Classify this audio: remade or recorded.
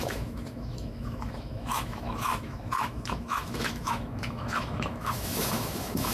remade